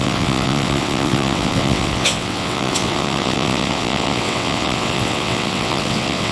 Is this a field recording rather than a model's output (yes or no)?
no